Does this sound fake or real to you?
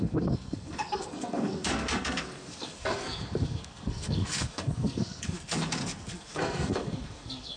fake